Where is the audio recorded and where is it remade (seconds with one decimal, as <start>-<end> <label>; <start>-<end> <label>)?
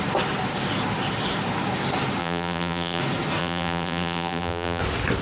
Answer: 0.0-2.2 recorded; 2.2-3.0 remade; 3.0-3.4 recorded; 3.4-4.8 remade; 4.8-5.2 recorded